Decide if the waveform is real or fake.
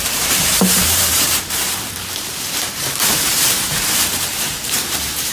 fake